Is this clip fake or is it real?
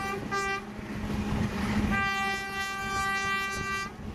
real